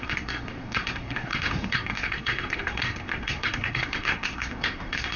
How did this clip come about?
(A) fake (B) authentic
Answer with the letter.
A